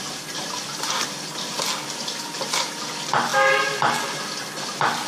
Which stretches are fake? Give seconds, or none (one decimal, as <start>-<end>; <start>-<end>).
none